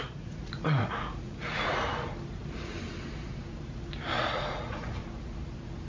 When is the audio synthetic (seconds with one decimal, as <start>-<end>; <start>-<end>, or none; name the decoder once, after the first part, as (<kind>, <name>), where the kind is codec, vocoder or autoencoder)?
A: 0.0-1.9 (vocoder, Vocos); 4.2-5.0